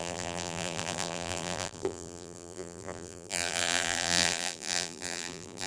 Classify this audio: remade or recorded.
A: remade